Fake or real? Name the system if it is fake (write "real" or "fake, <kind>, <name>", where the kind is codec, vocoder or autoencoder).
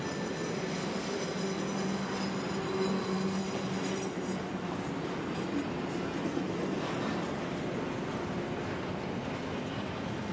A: real